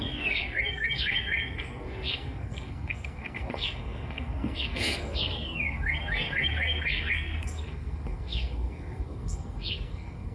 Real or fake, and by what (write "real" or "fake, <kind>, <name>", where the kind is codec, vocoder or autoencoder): fake, codec, SNAC